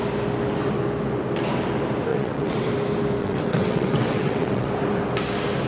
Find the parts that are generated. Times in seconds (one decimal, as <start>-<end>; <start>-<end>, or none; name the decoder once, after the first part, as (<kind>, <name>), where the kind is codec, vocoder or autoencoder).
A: 2.1-2.7 (vocoder, WaveNeXt); 3.2-4.7